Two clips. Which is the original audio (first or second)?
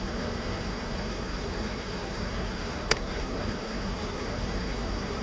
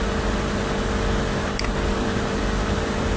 second